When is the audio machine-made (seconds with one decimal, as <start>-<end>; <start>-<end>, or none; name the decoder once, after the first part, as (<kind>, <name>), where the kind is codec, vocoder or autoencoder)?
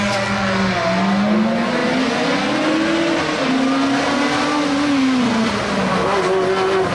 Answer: none